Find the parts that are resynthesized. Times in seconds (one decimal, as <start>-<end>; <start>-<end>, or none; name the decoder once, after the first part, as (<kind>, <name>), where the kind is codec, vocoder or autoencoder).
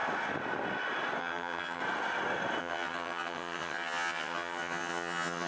1.2-1.8 (vocoder, HiFi-GAN); 2.6-5.5